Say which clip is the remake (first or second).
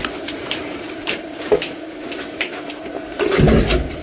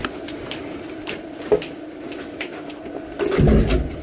first